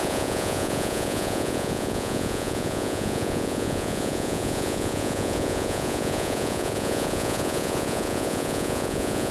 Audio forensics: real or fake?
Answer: fake